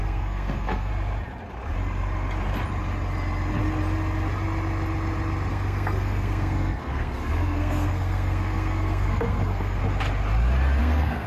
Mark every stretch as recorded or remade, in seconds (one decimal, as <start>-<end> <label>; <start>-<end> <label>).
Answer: 0.0-0.9 remade; 0.9-5.5 recorded; 5.5-9.8 remade; 9.8-10.8 recorded; 10.8-11.3 remade